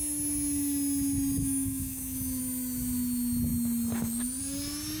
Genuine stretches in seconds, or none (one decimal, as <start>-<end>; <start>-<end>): 0.0-1.4; 2.4-5.0